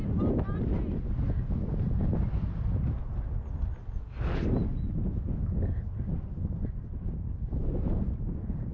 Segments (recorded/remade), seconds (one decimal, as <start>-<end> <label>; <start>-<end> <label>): 0.0-8.7 recorded